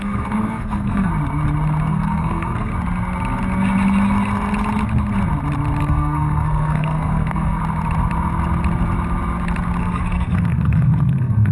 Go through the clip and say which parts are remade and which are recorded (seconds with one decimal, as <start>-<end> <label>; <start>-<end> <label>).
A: 0.0-1.1 remade; 1.1-1.9 recorded; 1.9-2.7 remade; 2.7-5.8 recorded; 5.8-7.6 remade; 7.6-9.8 recorded; 9.8-11.5 remade